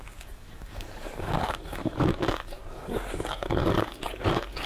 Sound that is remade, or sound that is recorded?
remade